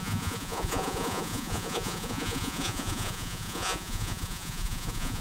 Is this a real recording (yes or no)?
no